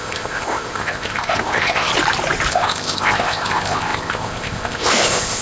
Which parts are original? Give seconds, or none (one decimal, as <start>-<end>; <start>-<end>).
1.9-2.5